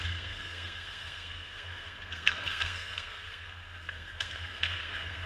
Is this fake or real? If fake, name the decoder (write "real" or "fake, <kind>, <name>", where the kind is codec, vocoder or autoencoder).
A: fake, codec, SNAC